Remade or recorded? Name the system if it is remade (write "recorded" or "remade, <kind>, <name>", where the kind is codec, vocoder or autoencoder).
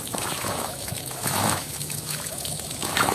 remade, autoencoder, DAC-VAE